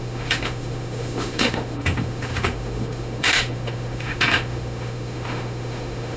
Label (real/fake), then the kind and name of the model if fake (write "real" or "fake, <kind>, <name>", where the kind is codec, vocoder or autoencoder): fake, autoencoder, DAC-VAE